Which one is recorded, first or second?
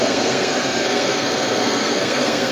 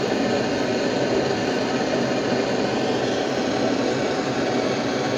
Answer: second